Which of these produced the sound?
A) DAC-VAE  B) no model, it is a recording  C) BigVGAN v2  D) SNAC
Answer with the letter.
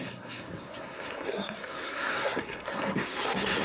D